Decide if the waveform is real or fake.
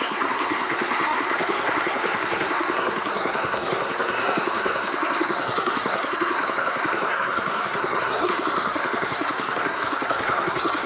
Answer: fake